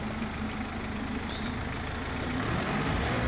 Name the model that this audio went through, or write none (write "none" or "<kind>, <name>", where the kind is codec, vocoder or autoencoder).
none